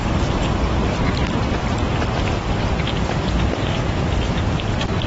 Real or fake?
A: real